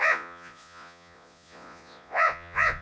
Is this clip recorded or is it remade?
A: remade